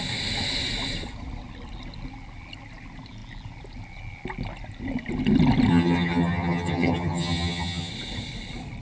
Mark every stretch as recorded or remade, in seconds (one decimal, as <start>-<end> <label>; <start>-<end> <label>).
0.0-5.7 recorded; 5.7-7.9 remade; 7.9-8.8 recorded